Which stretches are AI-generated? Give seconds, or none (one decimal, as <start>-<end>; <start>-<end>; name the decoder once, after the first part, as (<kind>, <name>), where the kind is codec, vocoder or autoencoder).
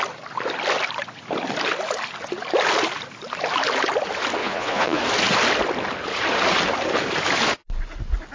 4.4-5.0 (vocoder, Vocos)